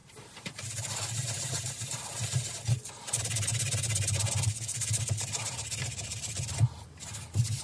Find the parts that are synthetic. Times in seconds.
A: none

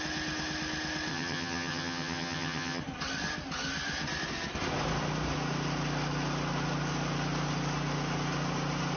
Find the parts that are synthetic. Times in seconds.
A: 1.1-2.8 (vocoder, HiFi-GAN)